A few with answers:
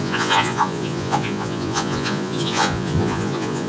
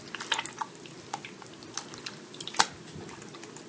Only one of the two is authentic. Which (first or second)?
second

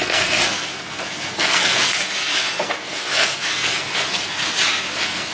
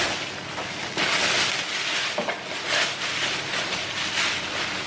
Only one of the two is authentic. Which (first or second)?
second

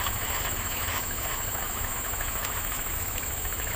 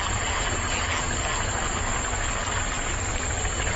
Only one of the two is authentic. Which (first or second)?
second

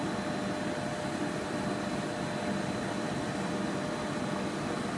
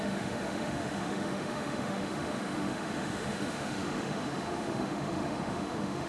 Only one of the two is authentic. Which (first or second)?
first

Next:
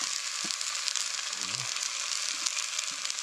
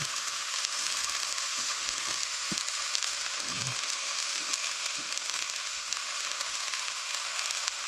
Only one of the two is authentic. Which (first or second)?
first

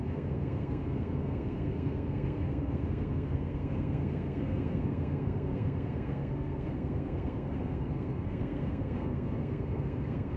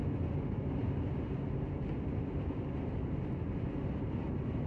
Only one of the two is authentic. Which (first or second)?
second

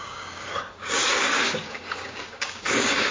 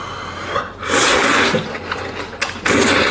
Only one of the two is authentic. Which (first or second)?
second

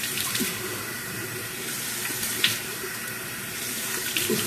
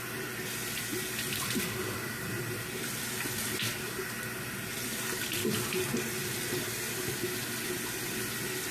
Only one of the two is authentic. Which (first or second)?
second